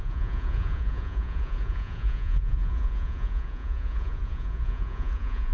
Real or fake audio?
fake